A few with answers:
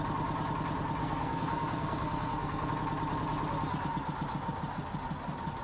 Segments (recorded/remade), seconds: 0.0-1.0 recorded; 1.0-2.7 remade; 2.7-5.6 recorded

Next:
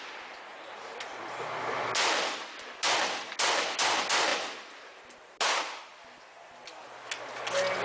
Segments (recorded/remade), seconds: 0.0-7.8 recorded

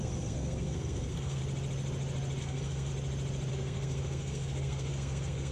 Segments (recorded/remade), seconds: 0.0-1.4 remade; 1.4-2.4 recorded; 2.4-2.9 remade; 2.9-3.5 recorded; 3.5-5.5 remade

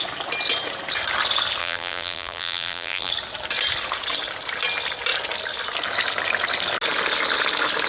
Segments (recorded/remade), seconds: 0.0-1.6 recorded; 1.6-3.1 remade; 3.1-7.9 recorded

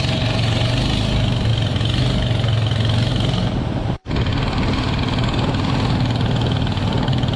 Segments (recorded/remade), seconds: 0.0-7.4 recorded